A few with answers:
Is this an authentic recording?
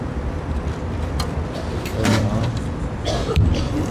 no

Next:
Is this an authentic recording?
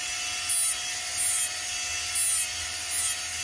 yes